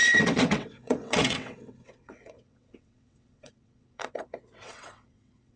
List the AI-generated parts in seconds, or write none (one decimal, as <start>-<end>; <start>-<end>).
0.0-5.6